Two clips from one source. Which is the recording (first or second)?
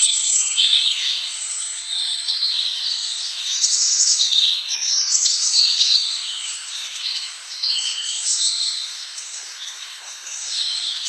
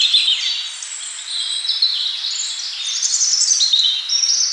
second